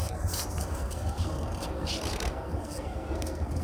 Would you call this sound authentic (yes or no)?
no